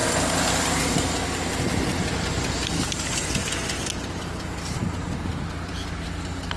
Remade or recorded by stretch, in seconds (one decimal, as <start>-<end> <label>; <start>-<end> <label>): 0.0-6.6 recorded